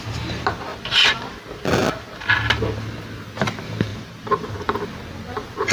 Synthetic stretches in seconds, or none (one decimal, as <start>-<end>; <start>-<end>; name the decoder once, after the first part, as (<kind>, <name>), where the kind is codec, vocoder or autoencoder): 0.7-1.4 (vocoder, BigVGAN v2); 3.9-4.5